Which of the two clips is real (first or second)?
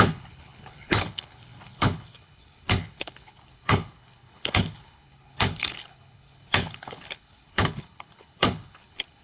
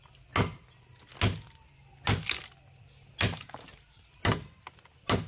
second